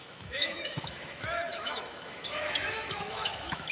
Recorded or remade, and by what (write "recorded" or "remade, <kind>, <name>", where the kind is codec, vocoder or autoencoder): remade, autoencoder, DAC-VAE